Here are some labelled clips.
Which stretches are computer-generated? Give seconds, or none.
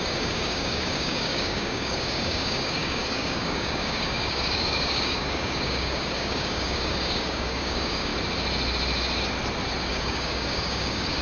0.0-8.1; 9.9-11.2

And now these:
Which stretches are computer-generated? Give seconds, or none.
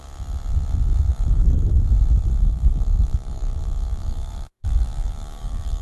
1.1-1.7; 2.3-5.8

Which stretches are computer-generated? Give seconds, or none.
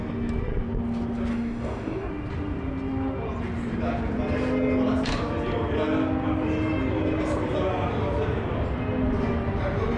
1.3-2.1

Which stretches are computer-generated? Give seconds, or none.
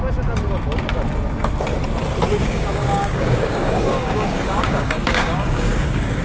2.4-6.2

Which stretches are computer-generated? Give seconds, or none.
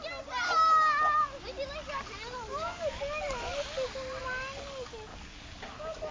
2.5-3.0; 5.1-6.1